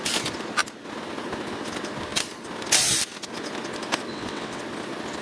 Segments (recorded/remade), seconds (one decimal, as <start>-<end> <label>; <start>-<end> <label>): 0.0-4.1 recorded; 4.1-4.6 remade; 4.6-5.2 recorded